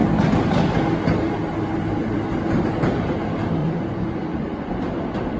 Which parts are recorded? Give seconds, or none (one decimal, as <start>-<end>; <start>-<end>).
0.0-3.6; 4.8-5.4